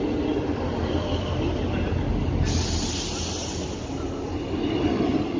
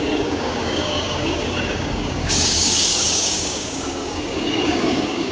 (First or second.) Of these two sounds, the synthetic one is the second